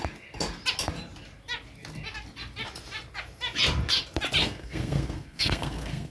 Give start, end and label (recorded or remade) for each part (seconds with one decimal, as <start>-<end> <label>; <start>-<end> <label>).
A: 0.0-4.4 recorded; 4.4-6.1 remade